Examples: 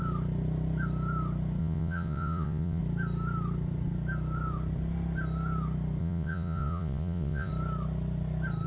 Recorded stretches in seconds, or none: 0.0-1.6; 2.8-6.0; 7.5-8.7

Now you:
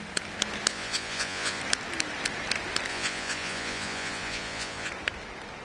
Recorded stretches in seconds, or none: 0.0-0.7; 1.6-2.9; 4.9-5.6

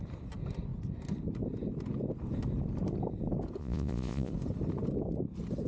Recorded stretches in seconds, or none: 0.0-3.6; 4.3-5.7